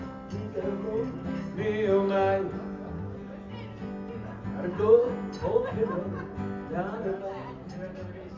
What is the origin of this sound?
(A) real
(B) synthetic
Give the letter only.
A